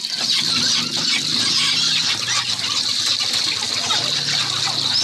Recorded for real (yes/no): yes